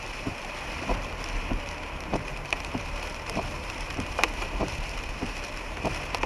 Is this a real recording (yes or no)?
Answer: no